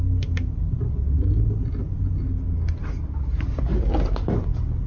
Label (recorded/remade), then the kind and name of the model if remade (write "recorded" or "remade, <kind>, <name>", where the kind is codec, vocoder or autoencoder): recorded